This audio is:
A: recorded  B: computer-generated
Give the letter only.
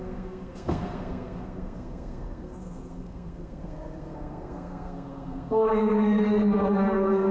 B